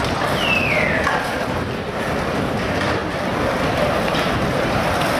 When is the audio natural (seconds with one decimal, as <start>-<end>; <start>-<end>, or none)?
0.0-5.2